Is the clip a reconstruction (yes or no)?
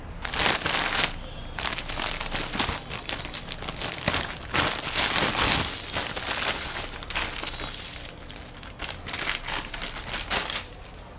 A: no